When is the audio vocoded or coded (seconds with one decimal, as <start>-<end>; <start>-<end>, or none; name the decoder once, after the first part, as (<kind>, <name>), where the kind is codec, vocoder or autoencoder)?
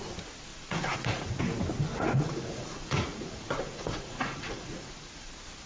0.5-1.4 (vocoder, Vocos); 1.9-5.3